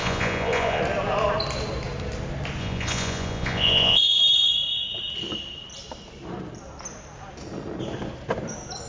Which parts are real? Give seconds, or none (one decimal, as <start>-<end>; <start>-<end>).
0.8-2.6; 4.2-8.9